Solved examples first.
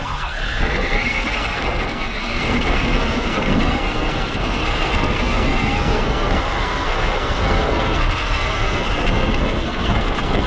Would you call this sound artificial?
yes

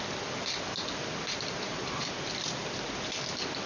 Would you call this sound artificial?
no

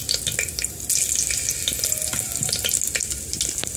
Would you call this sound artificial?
no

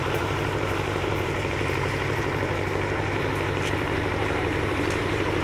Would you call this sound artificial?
yes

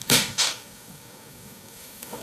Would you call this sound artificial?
yes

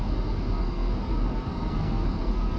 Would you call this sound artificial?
yes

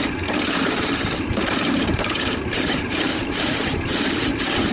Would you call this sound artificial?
yes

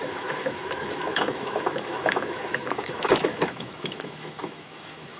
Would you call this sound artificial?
yes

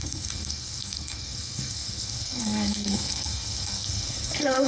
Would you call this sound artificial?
yes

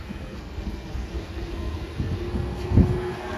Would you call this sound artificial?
yes